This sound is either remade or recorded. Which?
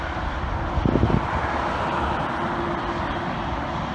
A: recorded